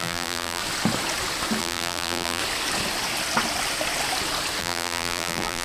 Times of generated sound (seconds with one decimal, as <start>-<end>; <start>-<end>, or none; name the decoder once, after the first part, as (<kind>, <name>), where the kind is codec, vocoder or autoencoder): 0.0-0.6 (vocoder, BigVGAN v2); 1.6-2.4; 4.6-5.6